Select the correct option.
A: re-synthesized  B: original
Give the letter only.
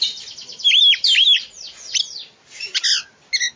B